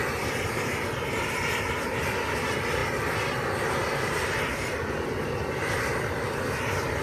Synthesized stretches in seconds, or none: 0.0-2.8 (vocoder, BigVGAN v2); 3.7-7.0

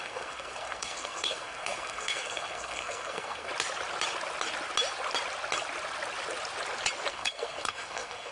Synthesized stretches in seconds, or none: 0.0-3.5 (codec, SNAC); 7.1-8.3

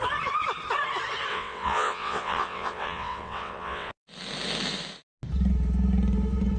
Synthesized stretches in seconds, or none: 1.3-3.9 (vocoder, WaveNeXt)